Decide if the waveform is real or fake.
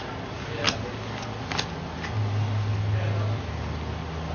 real